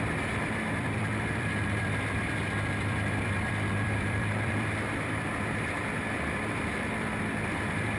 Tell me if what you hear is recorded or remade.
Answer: remade